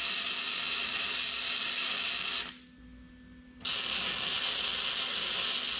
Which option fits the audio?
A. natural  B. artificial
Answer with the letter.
A